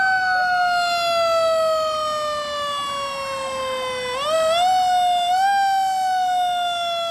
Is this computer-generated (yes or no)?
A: no